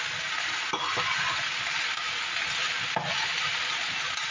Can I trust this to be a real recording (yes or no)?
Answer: yes